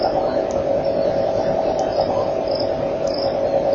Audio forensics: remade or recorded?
recorded